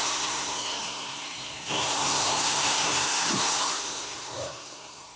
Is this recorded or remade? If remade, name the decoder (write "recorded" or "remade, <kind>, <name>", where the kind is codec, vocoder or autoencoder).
remade, codec, SNAC